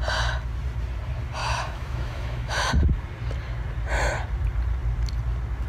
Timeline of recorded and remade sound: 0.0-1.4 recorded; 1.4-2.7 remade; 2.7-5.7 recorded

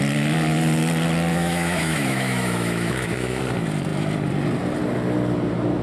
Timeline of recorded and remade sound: 0.0-1.3 recorded; 1.3-3.4 remade; 3.4-5.8 recorded